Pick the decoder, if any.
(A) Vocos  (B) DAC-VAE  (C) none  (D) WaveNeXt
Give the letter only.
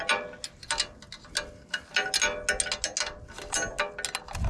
C